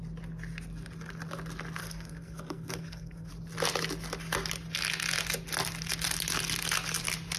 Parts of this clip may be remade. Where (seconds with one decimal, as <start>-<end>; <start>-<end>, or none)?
1.8-3.3